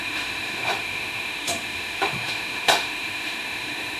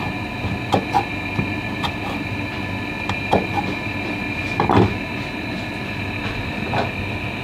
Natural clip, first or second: second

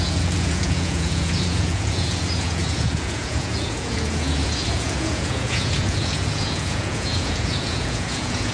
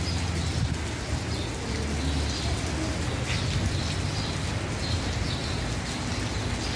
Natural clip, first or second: second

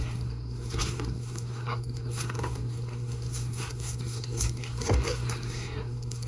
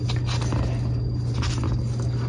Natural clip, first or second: second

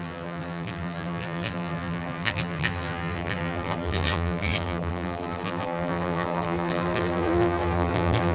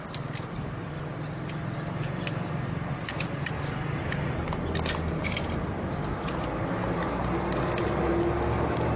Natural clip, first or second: second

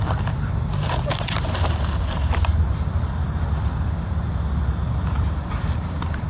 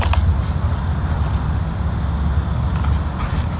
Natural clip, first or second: second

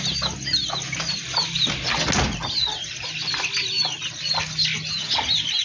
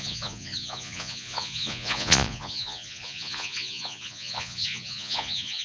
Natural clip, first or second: first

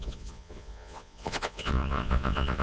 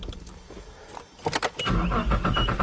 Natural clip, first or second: second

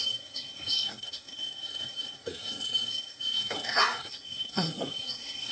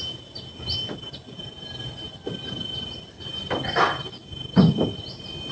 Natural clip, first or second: second